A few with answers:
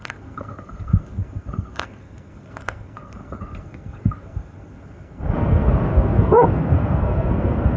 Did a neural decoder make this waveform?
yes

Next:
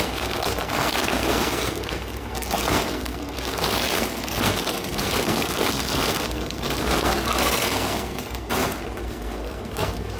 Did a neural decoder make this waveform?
yes